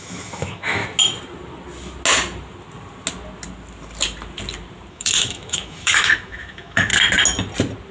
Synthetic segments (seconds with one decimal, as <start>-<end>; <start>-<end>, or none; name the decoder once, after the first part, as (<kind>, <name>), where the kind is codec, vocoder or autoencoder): 0.0-0.8 (autoencoder, DAC-VAE); 4.9-6.9